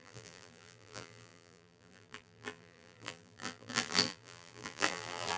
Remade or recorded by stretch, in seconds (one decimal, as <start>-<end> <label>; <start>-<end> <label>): 0.0-5.4 remade